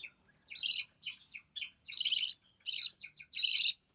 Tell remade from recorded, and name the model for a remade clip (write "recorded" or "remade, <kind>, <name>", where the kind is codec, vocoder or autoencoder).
recorded